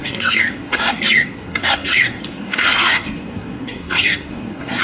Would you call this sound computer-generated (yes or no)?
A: yes